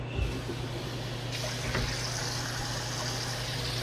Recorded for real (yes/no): yes